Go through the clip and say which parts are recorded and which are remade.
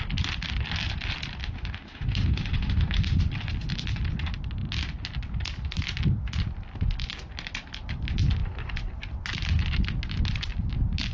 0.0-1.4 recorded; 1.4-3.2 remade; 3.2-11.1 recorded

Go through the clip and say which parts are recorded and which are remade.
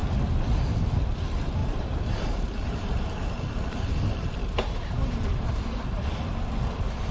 0.0-1.6 recorded; 1.6-5.5 remade; 5.5-7.1 recorded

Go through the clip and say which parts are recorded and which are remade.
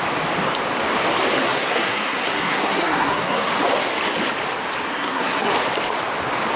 0.0-1.4 recorded; 1.4-3.5 remade; 3.5-4.9 recorded; 4.9-5.5 remade; 5.5-6.6 recorded